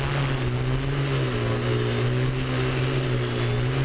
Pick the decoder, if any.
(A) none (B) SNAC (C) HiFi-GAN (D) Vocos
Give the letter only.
A